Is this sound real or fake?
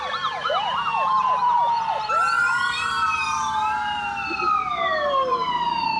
fake